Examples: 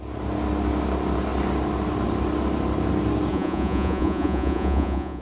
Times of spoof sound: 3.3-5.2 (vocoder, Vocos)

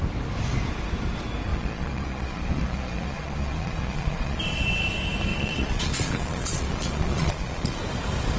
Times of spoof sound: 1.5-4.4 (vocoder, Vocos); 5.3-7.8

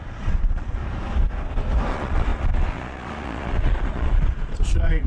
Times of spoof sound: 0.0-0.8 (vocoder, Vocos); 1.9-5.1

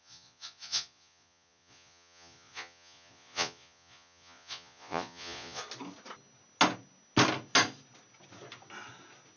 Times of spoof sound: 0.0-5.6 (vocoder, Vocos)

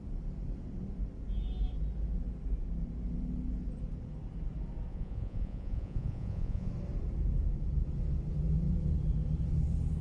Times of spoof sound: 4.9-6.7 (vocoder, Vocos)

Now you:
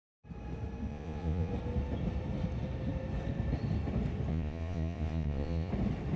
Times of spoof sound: 0.9-1.5 (vocoder, Vocos); 4.3-5.7